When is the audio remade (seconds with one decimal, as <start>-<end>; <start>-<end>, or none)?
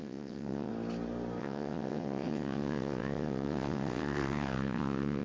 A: 0.0-0.7; 1.4-5.2